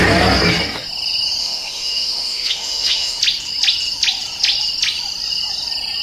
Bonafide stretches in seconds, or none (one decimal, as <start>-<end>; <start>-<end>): 0.0-1.4; 3.2-6.0